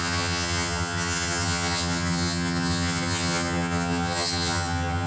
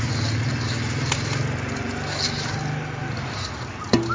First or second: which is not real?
first